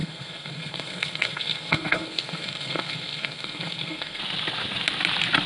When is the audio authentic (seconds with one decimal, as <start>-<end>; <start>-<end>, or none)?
4.2-5.5